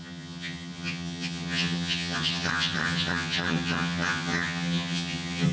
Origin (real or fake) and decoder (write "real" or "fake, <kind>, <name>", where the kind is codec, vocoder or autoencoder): fake, vocoder, HiFi-GAN